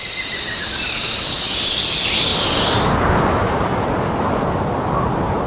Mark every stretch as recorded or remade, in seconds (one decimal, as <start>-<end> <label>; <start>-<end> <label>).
0.0-5.5 recorded